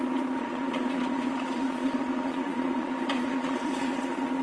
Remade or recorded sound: remade